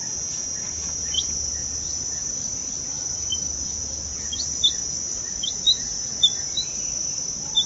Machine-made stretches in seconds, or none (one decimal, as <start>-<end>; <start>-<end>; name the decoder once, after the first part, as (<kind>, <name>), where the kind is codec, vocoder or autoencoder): none

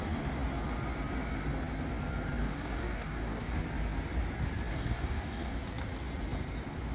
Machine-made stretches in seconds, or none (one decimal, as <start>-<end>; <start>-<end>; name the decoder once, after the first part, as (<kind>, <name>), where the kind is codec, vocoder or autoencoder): 2.4-3.6 (codec, DAC); 4.7-5.6